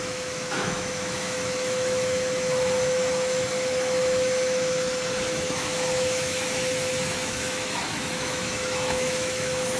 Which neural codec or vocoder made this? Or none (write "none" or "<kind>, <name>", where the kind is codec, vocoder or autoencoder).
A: autoencoder, DAC-VAE